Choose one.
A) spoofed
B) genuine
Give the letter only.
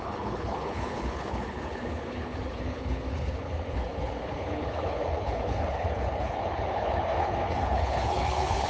A